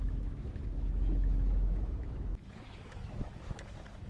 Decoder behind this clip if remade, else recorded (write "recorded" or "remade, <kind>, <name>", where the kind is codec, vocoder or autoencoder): remade, autoencoder, DAC-VAE